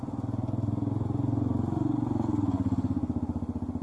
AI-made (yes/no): no